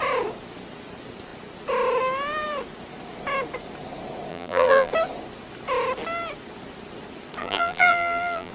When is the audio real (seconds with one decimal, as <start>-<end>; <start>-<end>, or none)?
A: 0.0-4.3; 4.9-7.4